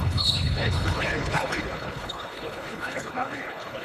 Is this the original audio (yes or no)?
no